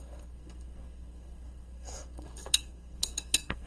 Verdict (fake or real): fake